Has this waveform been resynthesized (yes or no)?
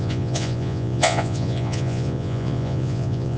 yes